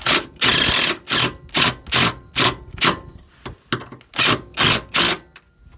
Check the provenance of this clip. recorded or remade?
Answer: recorded